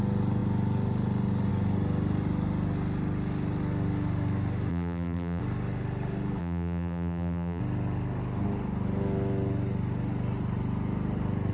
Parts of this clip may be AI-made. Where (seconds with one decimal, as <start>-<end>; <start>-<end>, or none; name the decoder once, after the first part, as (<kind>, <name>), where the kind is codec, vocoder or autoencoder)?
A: 4.7-5.4 (vocoder, BigVGAN v2); 6.4-7.6